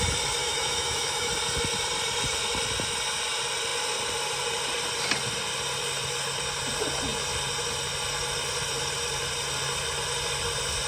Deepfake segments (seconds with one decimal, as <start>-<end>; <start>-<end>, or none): 0.4-1.3